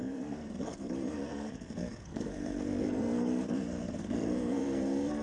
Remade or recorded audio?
remade